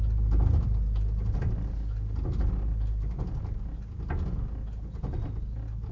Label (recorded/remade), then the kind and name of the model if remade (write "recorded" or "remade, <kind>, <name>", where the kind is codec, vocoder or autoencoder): recorded